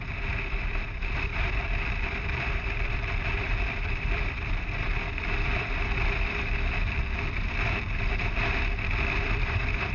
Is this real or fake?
fake